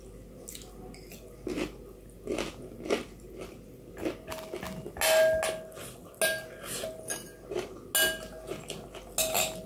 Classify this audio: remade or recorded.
recorded